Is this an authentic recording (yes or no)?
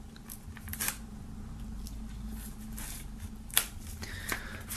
yes